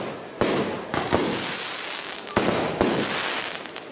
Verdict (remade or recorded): recorded